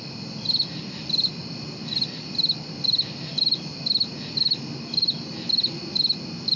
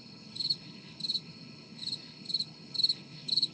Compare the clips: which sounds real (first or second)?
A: first